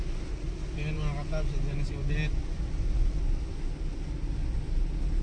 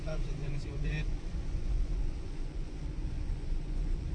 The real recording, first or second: first